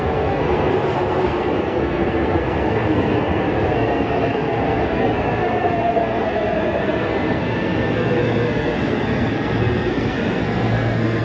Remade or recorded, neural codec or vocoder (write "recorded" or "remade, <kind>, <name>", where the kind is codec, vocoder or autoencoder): remade, codec, SNAC